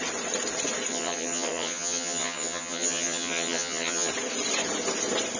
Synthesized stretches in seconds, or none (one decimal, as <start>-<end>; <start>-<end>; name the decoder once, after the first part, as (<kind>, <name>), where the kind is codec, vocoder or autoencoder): 0.9-4.1 (vocoder, HiFi-GAN)